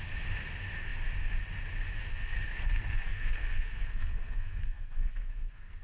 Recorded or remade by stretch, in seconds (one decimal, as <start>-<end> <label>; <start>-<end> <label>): 0.0-2.0 recorded; 2.0-5.8 remade